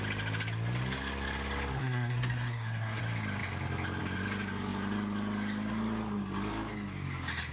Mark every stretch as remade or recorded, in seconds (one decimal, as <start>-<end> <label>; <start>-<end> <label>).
0.0-1.8 recorded; 1.8-3.0 remade; 3.0-7.5 recorded